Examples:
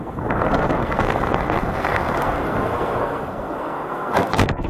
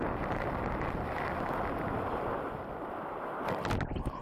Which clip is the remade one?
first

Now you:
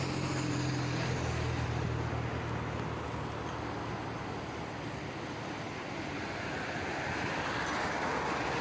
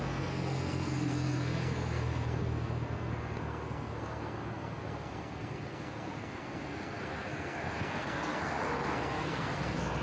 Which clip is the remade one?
second